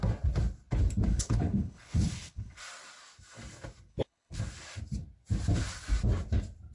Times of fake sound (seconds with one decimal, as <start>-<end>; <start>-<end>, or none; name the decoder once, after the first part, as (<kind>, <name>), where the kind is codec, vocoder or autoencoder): 1.1-2.6 (codec, HILCodec); 3.9-4.4

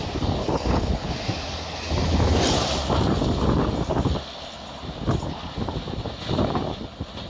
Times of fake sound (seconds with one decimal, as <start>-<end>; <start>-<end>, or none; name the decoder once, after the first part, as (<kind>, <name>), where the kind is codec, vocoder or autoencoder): 0.4-1.1 (codec, HILCodec)

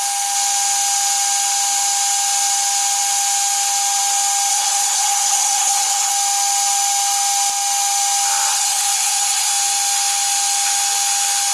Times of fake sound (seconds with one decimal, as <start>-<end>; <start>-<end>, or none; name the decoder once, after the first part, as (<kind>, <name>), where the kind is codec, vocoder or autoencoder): 4.5-6.1 (codec, HILCodec); 8.5-9.5

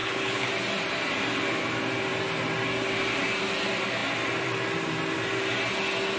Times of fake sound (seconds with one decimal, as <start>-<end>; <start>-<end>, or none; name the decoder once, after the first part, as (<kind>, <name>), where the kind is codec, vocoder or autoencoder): 0.0-0.5 (codec, HILCodec)

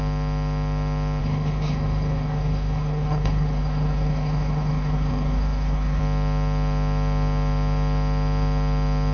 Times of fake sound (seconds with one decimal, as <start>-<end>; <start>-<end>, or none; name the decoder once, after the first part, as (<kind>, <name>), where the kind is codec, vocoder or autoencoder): 1.2-6.0 (codec, HILCodec)

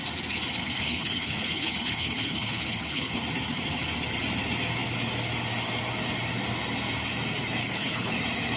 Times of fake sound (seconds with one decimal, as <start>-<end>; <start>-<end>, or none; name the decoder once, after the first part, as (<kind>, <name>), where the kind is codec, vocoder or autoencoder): 0.6-3.2 (codec, HILCodec); 7.6-8.1

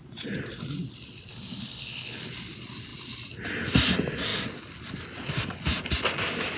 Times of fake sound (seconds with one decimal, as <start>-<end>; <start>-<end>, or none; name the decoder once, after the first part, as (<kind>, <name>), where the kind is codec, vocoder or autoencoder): 1.3-2.3 (codec, HILCodec)

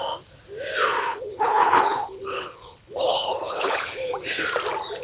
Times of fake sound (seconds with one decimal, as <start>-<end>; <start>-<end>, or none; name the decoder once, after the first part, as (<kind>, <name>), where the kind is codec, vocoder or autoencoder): 1.1-4.1 (codec, HILCodec)